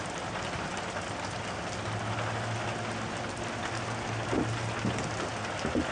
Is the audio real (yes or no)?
yes